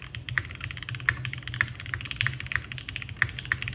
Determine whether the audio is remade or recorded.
recorded